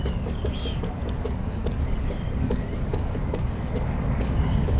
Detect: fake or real fake